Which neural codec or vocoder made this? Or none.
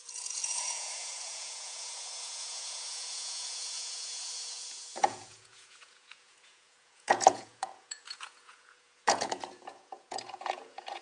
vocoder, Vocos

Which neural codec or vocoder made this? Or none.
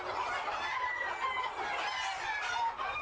none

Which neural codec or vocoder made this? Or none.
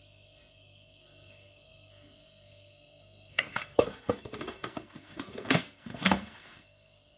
codec, SNAC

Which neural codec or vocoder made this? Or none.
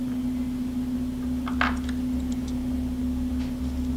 none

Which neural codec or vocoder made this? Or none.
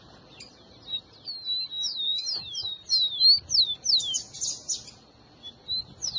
none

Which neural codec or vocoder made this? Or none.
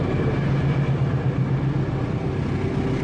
none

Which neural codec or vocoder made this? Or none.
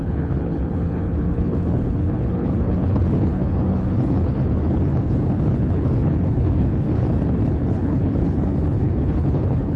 codec, HILCodec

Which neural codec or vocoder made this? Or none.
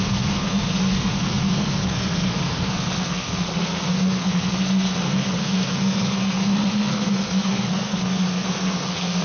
codec, SNAC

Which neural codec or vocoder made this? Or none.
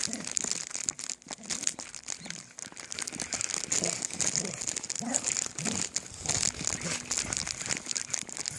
none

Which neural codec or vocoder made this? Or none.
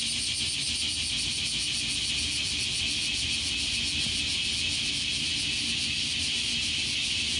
none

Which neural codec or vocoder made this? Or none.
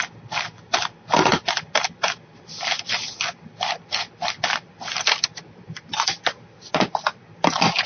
none